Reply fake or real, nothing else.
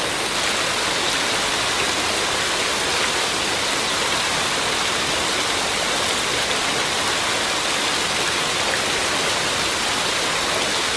real